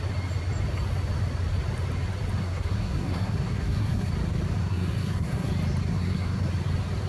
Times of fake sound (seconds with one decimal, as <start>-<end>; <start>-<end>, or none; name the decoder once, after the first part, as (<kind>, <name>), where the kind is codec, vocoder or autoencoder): 2.4-4.1 (codec, SNAC); 4.6-5.5; 5.9-6.4